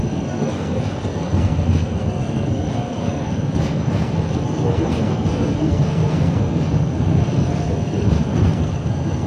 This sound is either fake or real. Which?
fake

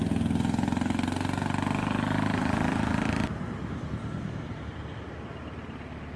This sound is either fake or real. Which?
real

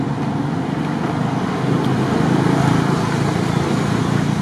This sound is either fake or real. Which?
real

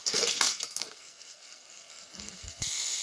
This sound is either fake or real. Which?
fake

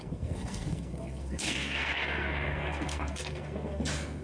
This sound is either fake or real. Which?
fake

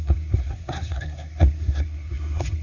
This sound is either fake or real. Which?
fake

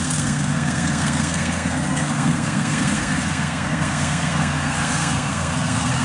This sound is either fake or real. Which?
fake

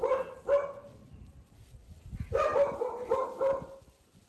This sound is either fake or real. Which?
real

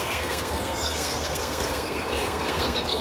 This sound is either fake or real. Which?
fake